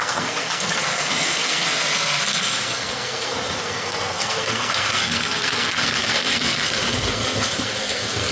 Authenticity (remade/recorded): remade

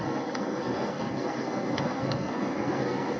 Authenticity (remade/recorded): remade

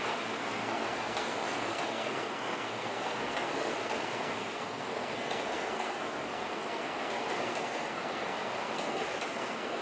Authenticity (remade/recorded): remade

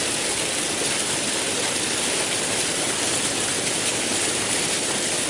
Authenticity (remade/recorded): recorded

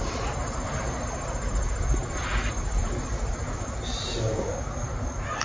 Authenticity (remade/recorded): recorded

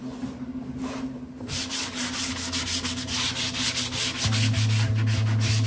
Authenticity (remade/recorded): recorded